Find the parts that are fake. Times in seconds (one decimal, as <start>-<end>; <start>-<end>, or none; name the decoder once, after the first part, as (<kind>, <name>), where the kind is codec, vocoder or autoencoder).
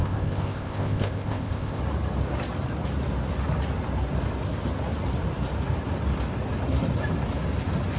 0.0-1.8 (codec, ZipCodec)